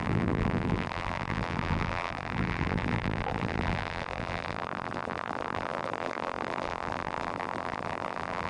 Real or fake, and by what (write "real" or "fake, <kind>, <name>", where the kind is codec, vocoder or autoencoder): fake, vocoder, BigVGAN v2